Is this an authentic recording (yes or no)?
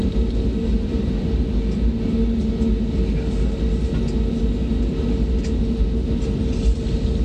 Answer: yes